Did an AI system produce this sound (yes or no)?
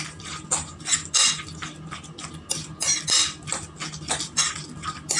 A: no